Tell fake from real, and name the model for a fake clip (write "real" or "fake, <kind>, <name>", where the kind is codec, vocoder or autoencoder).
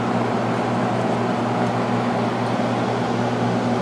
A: real